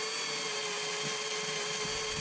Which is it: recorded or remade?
recorded